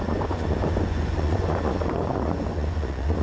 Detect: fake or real fake